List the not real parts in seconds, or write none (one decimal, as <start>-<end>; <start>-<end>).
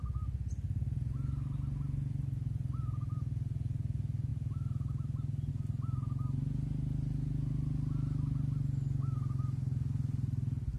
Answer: none